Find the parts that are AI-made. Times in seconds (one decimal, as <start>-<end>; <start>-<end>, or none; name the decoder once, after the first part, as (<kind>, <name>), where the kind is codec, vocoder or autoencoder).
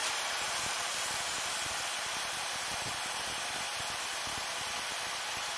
0.0-2.5 (vocoder, BigVGAN v2)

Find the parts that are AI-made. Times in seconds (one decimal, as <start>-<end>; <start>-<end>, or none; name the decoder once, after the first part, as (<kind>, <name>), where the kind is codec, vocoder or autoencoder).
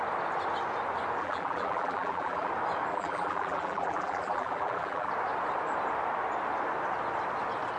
1.2-2.5 (vocoder, BigVGAN v2); 2.9-5.1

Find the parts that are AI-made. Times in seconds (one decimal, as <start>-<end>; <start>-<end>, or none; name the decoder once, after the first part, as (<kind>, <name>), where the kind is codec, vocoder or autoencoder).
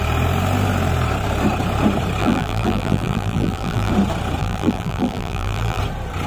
2.2-3.9 (vocoder, BigVGAN v2); 4.4-5.8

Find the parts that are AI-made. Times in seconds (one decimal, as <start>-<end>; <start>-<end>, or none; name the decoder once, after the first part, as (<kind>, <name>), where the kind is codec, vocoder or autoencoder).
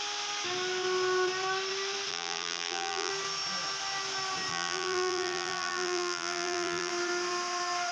2.1-3.1 (vocoder, BigVGAN v2); 4.5-6.9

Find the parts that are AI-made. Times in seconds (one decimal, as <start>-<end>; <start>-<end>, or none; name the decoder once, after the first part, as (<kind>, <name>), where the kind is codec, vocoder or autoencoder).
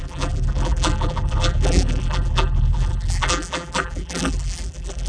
0.0-5.1 (vocoder, BigVGAN v2)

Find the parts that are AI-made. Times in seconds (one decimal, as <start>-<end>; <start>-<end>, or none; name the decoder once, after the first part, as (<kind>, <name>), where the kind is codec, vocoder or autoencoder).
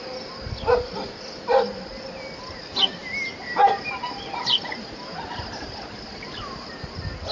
3.0-6.7 (vocoder, BigVGAN v2)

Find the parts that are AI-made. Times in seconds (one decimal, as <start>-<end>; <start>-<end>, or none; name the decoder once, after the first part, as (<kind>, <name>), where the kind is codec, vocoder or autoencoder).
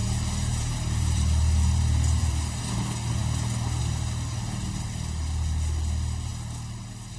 0.0-2.6 (vocoder, BigVGAN v2)